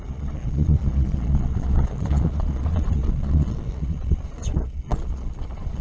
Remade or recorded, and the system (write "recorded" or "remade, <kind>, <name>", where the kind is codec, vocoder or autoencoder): remade, vocoder, Vocos